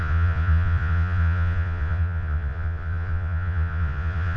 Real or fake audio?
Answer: fake